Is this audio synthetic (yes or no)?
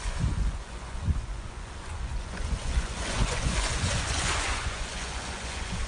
yes